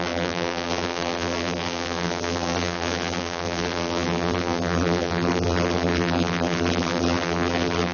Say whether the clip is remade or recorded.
remade